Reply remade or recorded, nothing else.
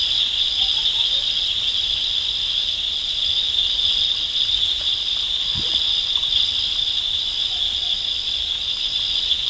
recorded